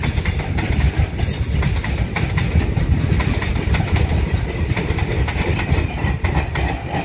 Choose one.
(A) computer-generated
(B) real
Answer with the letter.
B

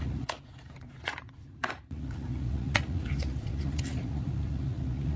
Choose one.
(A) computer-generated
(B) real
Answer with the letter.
A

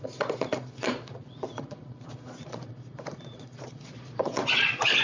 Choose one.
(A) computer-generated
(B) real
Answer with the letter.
A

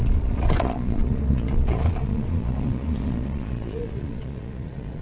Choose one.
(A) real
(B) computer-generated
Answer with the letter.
B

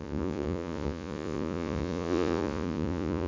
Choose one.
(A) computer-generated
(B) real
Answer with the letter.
A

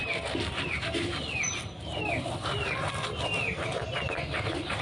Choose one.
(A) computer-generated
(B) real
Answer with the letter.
B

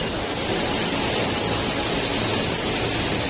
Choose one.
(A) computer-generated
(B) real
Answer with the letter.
B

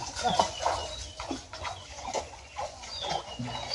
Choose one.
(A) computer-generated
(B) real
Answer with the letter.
A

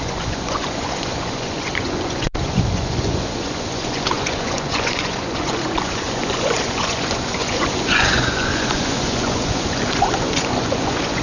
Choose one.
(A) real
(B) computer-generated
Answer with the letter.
B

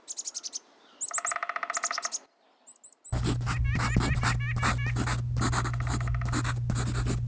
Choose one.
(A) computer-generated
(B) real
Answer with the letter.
B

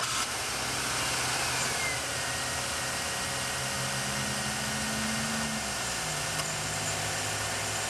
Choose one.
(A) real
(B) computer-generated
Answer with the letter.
A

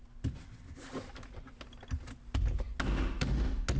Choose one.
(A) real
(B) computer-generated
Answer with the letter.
A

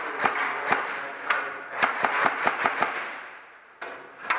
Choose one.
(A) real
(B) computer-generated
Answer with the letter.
A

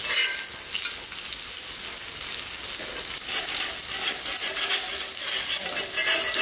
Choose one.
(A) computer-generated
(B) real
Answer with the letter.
B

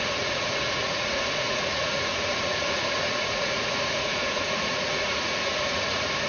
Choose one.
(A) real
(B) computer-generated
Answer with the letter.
B